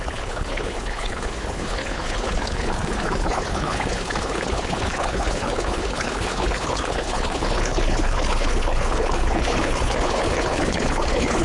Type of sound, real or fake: fake